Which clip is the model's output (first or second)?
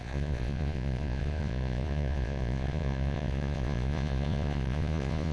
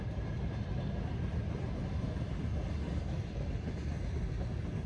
first